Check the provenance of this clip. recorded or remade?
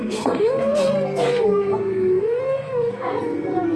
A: remade